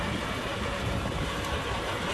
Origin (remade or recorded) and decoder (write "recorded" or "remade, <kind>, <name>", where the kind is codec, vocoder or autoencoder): remade, vocoder, BigVGAN v2